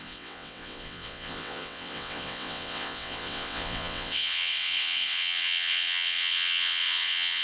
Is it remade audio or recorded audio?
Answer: remade